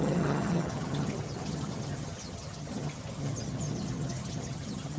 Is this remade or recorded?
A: remade